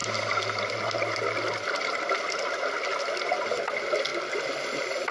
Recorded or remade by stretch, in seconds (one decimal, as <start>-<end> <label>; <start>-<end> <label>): 0.0-5.1 recorded